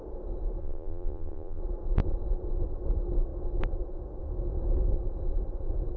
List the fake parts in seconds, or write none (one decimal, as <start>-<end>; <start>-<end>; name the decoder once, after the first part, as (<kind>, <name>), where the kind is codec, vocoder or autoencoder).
0.6-1.6 (vocoder, Vocos)